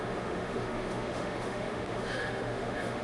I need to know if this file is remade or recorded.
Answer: remade